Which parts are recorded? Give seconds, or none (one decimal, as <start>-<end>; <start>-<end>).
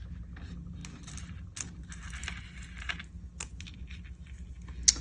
0.0-5.0